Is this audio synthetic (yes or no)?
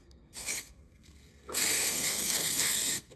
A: yes